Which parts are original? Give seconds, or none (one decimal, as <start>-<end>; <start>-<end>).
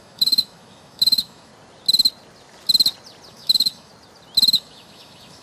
1.5-3.3; 3.9-4.5